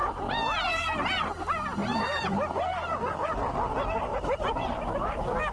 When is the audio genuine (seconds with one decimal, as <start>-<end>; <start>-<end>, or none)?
0.0-1.8; 2.6-4.1; 5.1-5.5